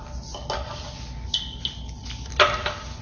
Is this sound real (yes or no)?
yes